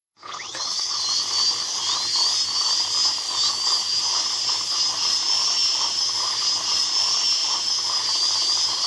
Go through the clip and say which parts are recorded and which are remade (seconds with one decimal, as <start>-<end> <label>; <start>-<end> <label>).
0.0-1.0 remade; 1.0-8.9 recorded